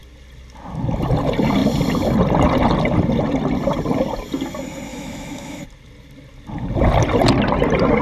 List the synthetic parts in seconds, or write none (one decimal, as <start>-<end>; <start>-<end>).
4.9-5.6